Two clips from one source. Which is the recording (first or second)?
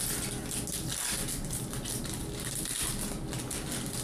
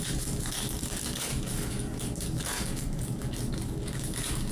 first